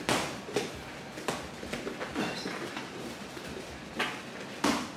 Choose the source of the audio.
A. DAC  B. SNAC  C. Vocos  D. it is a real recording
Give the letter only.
D